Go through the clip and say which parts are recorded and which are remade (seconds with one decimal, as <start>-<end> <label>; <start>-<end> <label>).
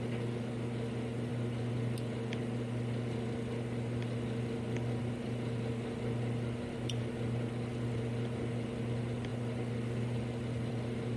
0.0-11.2 recorded